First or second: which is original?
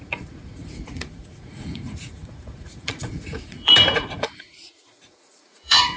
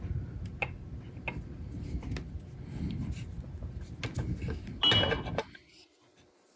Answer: second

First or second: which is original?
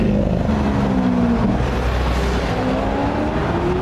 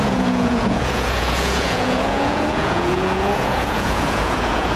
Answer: first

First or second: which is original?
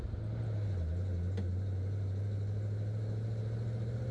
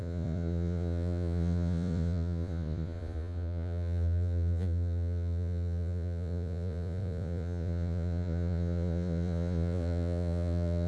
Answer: first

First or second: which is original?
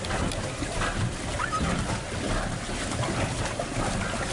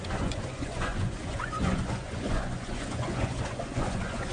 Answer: first